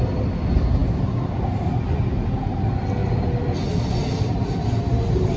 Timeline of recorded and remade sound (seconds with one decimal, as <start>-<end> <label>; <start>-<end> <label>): 0.0-5.4 recorded